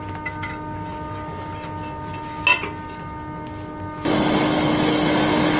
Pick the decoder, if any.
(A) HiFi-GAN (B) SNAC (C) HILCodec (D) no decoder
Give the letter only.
D